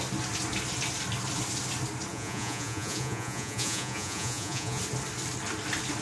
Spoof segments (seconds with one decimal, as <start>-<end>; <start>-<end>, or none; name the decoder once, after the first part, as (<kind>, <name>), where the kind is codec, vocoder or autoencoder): 2.1-4.8 (vocoder, Vocos)